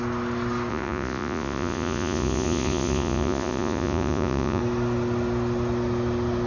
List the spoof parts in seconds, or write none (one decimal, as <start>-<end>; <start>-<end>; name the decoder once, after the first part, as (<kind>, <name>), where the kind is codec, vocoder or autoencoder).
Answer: 0.7-4.6 (vocoder, Vocos)